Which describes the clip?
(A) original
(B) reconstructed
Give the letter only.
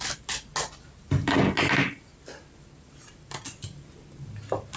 A